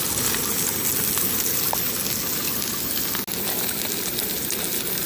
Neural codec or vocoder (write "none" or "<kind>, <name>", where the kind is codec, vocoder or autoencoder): none